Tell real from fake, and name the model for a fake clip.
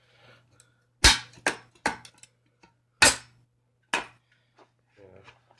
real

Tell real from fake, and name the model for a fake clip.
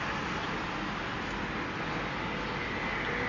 real